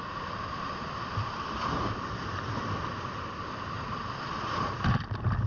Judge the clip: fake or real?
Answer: fake